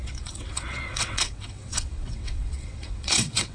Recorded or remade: remade